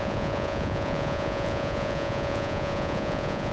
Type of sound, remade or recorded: remade